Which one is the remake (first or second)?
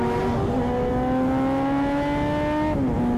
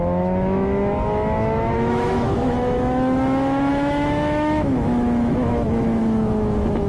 second